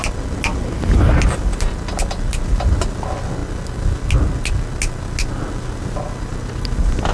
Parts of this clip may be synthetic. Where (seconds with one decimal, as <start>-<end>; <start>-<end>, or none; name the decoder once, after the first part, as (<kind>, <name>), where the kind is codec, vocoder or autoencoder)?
none